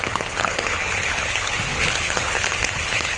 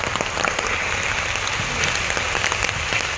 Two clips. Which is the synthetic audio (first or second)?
first